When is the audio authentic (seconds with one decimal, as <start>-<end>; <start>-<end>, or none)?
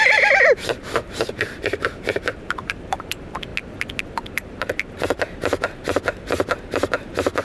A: 3.5-4.0